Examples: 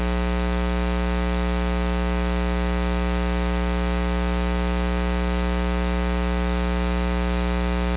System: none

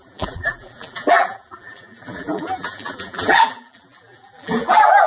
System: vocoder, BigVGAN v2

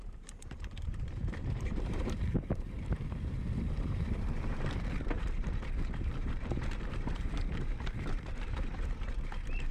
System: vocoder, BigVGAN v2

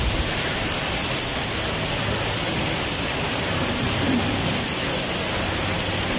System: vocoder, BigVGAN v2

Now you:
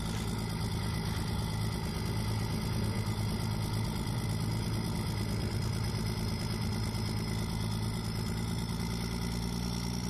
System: none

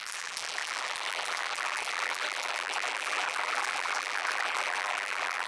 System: vocoder, BigVGAN v2